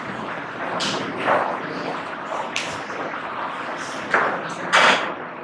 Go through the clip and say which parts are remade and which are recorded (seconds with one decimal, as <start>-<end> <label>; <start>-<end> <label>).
0.0-1.9 recorded; 1.9-2.7 remade; 2.7-5.4 recorded